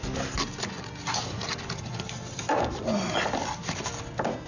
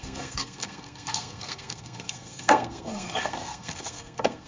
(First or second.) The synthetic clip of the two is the second